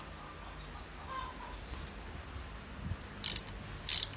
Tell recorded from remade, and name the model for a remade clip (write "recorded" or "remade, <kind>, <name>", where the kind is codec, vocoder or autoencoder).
recorded